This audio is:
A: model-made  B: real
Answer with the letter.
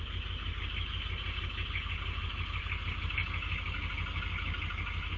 B